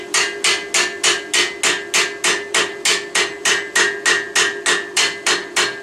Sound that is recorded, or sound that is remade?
recorded